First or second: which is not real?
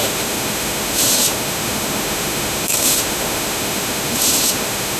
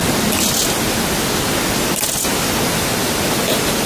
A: first